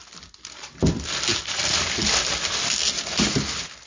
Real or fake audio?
real